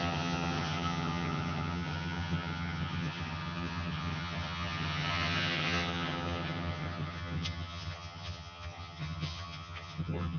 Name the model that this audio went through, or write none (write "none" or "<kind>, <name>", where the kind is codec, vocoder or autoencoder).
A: vocoder, HiFi-GAN